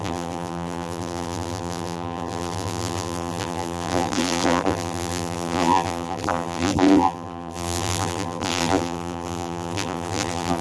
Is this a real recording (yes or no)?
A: no